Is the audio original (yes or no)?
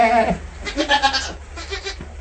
yes